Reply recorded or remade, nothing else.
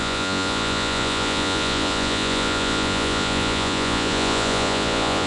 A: remade